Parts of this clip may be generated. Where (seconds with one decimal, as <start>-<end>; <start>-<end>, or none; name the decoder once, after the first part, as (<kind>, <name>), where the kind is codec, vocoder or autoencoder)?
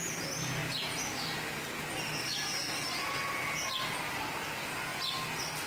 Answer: none